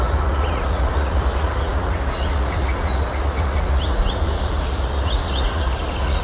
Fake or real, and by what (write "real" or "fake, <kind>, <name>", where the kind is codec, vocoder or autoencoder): fake, vocoder, Vocos